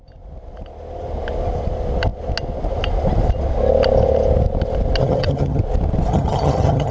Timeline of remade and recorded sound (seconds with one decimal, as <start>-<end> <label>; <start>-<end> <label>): 0.0-5.0 recorded; 5.0-5.6 remade; 5.6-6.1 recorded; 6.1-6.9 remade